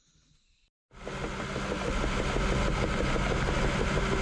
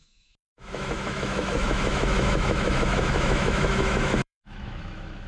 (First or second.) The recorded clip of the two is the first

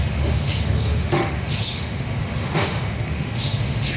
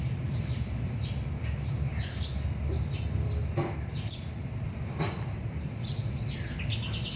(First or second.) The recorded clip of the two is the second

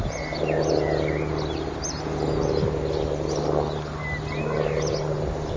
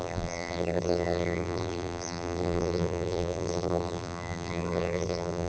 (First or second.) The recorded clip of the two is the first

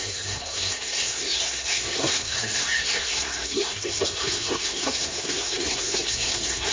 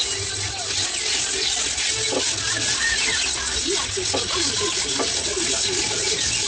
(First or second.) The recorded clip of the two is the second